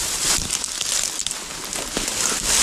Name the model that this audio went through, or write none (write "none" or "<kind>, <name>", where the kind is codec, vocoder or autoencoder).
none